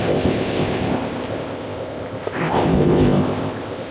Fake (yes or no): yes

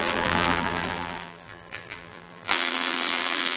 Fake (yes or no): yes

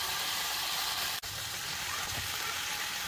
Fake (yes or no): yes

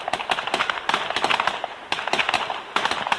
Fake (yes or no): no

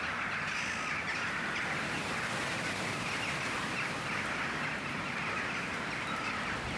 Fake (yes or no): no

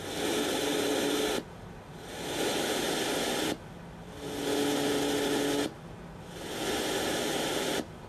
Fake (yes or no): no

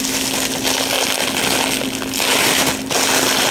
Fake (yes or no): no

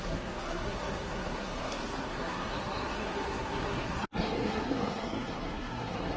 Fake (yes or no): yes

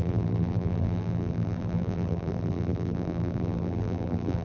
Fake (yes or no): yes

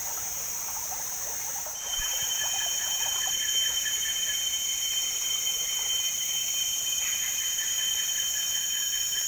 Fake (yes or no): yes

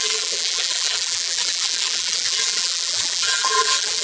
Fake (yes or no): yes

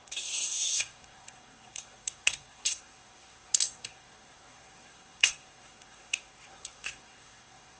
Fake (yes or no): yes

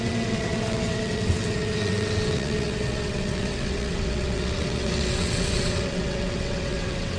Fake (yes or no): yes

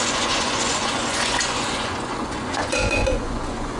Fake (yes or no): yes